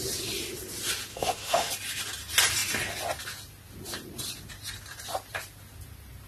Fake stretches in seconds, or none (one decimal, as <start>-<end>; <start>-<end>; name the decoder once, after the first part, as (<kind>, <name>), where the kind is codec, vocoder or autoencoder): 1.1-1.7 (autoencoder, DAC-VAE)